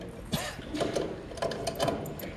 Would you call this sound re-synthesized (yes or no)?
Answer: no